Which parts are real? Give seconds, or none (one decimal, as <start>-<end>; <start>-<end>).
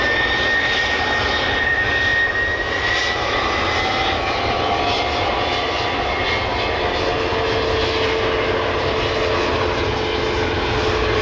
0.0-11.2